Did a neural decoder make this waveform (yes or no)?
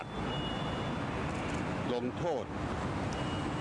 no